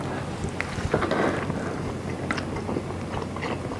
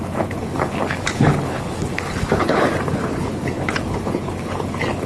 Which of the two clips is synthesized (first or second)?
second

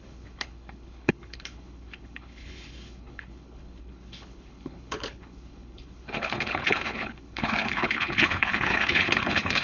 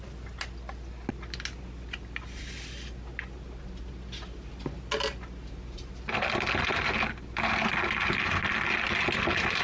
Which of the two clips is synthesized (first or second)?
first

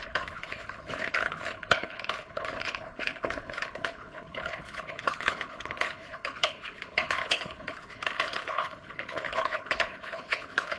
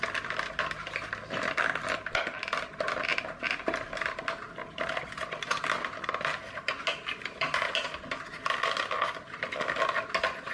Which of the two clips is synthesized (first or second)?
first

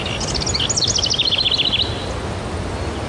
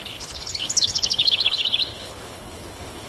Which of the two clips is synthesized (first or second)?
second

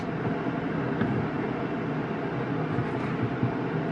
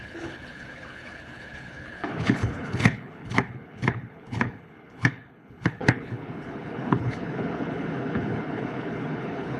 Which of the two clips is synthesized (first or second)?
second